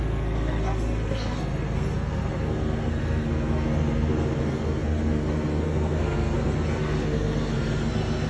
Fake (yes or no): yes